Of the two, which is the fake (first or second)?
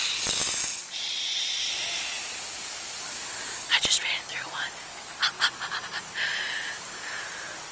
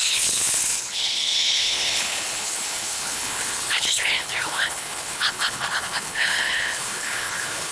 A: second